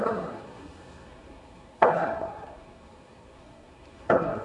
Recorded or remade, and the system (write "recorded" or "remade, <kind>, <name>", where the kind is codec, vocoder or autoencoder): remade, codec, SNAC